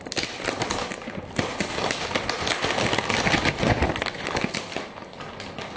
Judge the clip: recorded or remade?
recorded